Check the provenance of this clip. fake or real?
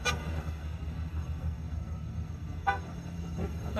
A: fake